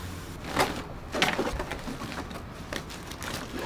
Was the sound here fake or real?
real